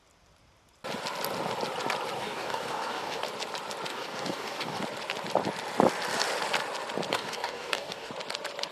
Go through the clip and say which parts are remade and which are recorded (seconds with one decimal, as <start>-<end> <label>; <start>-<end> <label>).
0.0-2.2 recorded; 2.2-3.2 remade; 3.2-3.9 recorded; 3.9-4.8 remade; 4.8-7.1 recorded; 7.1-8.1 remade; 8.1-8.7 recorded